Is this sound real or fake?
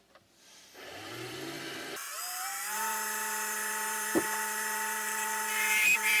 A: fake